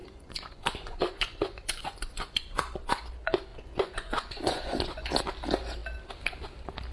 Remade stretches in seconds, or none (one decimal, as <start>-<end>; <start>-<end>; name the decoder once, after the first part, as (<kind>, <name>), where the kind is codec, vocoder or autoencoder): 0.0-3.0 (vocoder, Vocos); 3.5-5.1